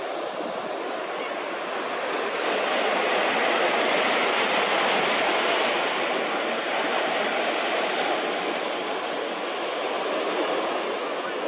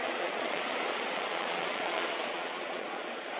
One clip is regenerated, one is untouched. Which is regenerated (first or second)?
second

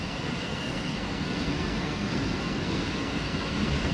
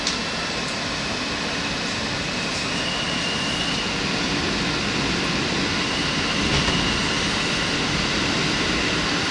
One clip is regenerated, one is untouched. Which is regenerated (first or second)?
first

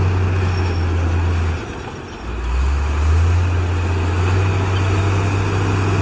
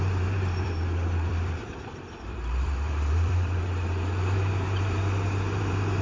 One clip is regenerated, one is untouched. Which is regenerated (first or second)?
second